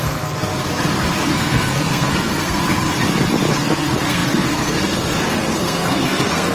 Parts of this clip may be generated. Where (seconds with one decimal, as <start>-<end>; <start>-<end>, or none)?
0.0-0.5; 1.3-2.6; 3.5-6.5